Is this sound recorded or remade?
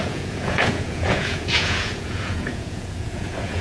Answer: remade